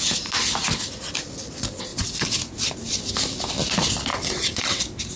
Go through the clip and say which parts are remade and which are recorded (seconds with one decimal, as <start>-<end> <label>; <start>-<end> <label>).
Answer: 0.0-1.9 recorded; 1.9-2.4 remade; 2.4-4.1 recorded; 4.1-4.8 remade; 4.8-5.2 recorded